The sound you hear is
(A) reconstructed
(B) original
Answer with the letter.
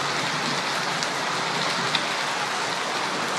B